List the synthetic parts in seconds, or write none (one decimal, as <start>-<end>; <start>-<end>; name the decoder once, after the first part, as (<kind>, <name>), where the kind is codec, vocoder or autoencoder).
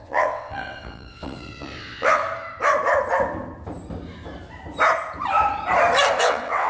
0.0-2.2 (vocoder, WaveNeXt); 6.2-6.7